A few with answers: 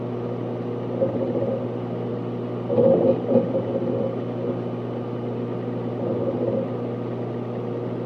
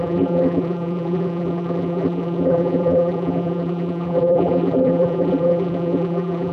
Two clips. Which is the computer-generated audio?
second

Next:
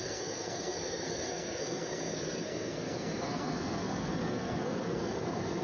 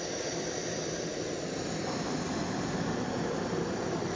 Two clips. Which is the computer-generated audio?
first